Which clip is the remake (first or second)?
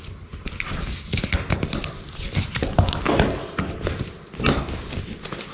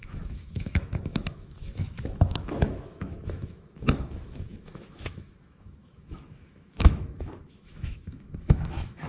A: second